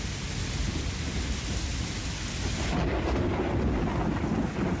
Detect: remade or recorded recorded